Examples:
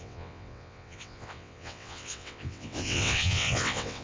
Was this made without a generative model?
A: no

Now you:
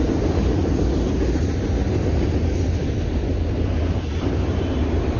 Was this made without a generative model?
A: yes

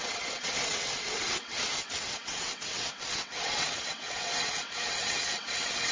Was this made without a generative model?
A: no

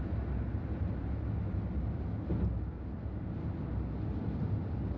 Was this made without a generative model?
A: yes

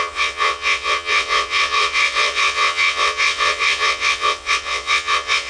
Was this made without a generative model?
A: no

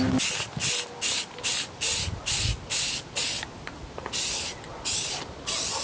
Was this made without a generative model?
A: yes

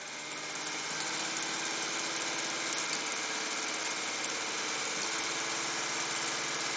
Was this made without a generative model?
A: yes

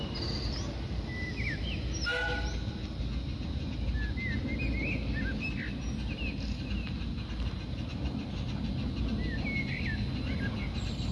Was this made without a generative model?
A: yes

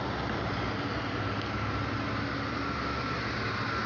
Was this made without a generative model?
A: yes